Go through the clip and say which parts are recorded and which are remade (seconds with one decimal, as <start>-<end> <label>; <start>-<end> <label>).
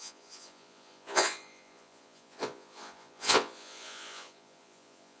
0.0-5.2 remade